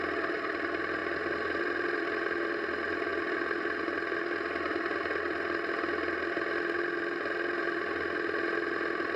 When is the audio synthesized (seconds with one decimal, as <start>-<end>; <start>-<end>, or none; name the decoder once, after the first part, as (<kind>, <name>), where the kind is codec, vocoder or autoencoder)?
none